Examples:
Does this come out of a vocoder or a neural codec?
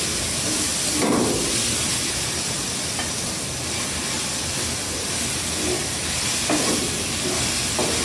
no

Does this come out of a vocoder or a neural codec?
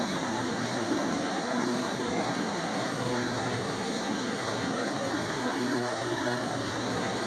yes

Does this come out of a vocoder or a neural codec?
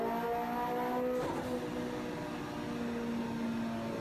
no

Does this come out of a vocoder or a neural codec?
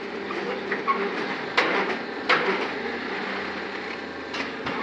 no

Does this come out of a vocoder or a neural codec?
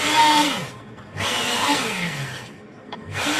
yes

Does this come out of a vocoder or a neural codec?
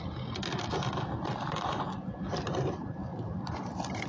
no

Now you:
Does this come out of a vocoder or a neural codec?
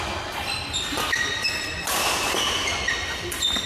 no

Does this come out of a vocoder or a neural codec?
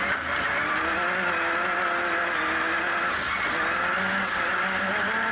no